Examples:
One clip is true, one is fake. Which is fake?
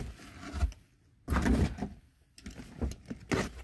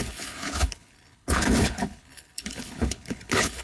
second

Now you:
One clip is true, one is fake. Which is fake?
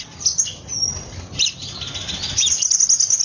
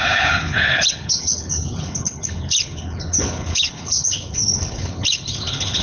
second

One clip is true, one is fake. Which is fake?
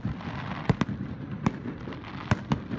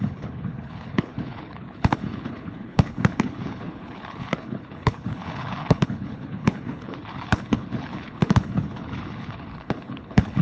second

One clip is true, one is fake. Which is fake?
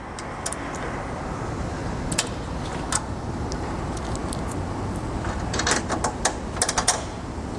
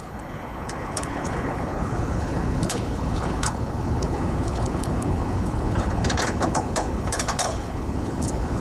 second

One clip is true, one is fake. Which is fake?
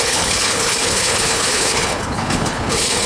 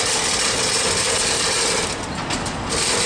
first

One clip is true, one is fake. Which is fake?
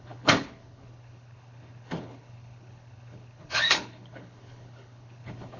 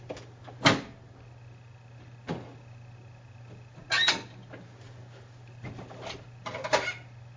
first